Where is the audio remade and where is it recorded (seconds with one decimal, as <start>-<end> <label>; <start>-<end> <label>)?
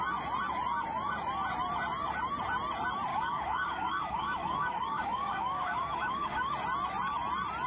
0.0-3.1 recorded; 3.1-6.5 remade; 6.5-7.7 recorded